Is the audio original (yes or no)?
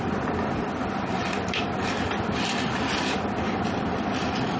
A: no